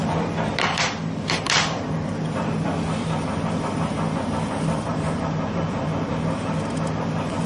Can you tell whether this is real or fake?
fake